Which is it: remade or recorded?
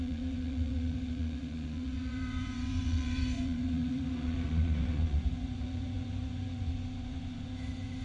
remade